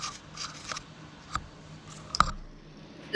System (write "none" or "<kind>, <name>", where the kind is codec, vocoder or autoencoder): none